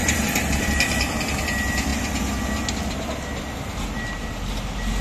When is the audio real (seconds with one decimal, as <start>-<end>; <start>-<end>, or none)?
1.2-5.0